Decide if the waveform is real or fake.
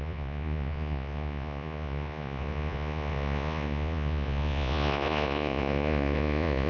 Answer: fake